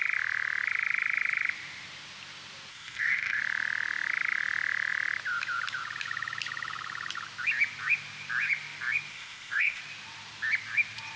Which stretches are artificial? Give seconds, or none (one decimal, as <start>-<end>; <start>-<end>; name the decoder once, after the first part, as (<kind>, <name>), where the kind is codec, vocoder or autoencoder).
2.7-3.4 (codec, ZipCodec); 9.1-9.8

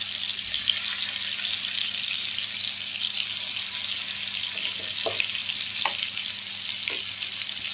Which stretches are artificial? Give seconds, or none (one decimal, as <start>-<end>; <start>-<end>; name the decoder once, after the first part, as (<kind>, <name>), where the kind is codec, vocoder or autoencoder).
none

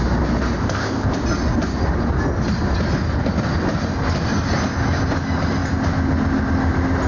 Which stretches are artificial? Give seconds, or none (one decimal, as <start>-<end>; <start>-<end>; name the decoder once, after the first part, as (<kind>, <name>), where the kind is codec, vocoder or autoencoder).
0.6-1.1 (codec, ZipCodec)

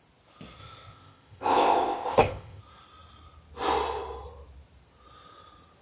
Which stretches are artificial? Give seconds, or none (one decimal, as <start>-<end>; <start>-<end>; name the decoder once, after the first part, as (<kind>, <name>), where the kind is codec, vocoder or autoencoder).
0.6-2.6 (codec, ZipCodec)

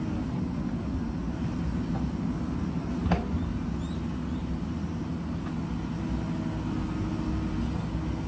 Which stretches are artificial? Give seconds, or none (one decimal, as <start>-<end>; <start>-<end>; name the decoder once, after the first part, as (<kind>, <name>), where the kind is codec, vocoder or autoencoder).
none